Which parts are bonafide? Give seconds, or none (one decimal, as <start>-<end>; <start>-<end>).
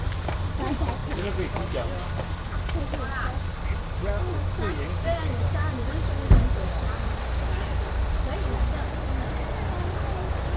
0.0-10.6